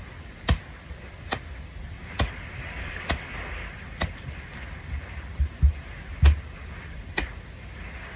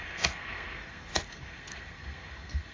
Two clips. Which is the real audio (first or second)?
first